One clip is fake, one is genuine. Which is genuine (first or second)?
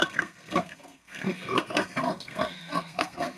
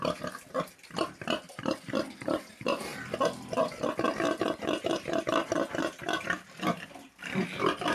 second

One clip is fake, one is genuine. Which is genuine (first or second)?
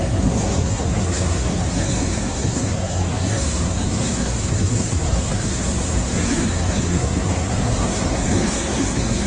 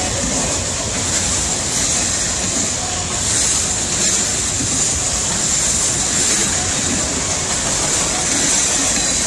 second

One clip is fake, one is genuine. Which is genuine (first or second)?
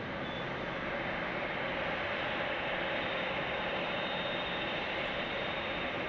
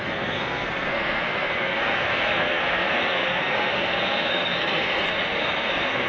first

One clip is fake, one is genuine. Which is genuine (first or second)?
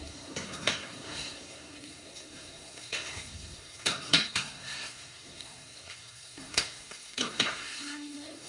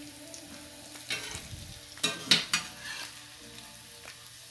second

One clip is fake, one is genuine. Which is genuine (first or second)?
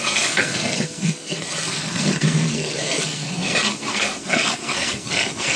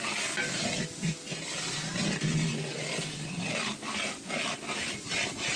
second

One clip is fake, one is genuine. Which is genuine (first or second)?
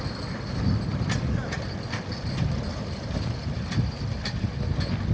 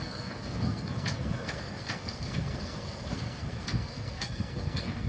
first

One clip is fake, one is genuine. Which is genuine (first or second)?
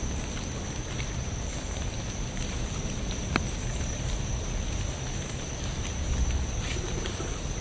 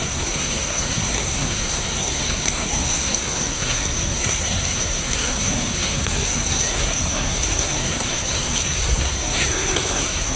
first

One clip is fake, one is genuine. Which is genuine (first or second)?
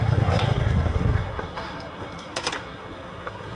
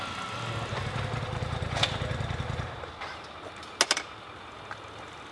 second